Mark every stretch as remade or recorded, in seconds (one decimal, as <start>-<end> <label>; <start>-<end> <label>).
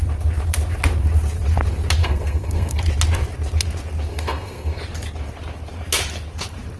0.0-2.0 recorded; 2.0-2.8 remade; 2.8-4.1 recorded; 4.1-4.8 remade; 4.8-6.8 recorded